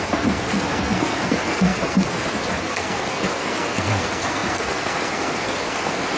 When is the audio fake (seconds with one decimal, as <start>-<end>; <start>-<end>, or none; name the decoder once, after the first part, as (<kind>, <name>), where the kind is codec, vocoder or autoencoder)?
0.0-6.2 (codec, SNAC)